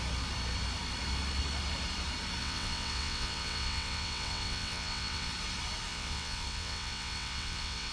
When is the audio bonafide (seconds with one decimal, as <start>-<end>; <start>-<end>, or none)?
0.0-2.4; 5.3-5.9